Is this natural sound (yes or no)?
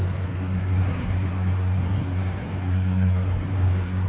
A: no